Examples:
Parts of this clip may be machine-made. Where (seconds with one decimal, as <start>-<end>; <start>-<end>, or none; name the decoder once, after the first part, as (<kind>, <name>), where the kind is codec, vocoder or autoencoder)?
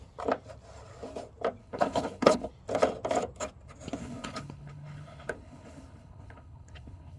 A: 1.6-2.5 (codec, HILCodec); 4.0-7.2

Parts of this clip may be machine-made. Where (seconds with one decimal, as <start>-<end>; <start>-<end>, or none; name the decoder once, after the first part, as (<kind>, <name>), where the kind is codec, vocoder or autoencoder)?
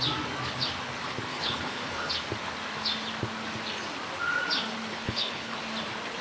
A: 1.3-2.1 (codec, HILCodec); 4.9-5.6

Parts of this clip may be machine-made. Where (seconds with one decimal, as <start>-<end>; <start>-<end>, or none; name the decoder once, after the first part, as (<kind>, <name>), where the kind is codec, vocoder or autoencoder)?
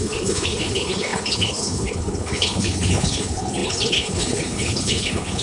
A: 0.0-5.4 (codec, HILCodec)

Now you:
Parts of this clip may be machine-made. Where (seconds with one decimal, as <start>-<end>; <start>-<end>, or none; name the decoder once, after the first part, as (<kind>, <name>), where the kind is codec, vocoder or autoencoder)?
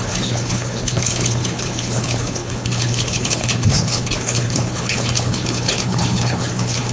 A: 0.0-6.9 (codec, HILCodec)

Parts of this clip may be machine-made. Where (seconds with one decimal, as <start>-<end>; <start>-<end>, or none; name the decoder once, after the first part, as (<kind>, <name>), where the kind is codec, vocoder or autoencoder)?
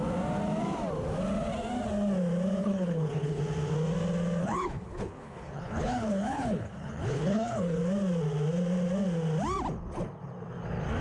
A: 2.6-3.4 (codec, HILCodec); 4.4-7.8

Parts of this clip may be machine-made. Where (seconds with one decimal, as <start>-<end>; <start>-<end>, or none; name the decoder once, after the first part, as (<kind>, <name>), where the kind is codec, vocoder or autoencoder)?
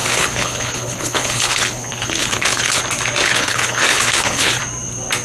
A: 0.0-2.8 (codec, HILCodec); 3.2-4.6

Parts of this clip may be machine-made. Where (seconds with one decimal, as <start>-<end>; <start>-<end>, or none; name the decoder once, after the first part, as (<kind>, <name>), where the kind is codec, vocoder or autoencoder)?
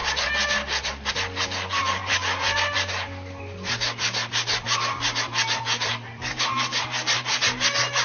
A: none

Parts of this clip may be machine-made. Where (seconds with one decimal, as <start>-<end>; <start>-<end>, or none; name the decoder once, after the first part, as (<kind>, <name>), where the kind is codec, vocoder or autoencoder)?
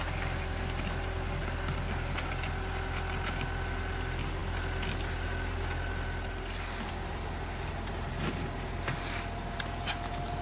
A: none